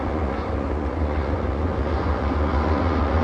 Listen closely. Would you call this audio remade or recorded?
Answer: remade